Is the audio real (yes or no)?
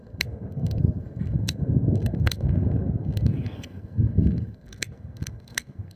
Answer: no